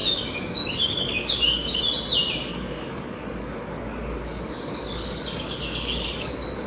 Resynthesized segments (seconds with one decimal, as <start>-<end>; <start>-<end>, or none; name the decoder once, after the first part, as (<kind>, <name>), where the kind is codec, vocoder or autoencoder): 0.0-1.8 (codec, DAC); 2.5-6.7